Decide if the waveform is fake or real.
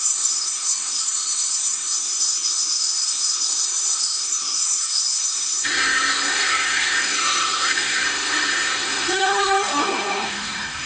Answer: fake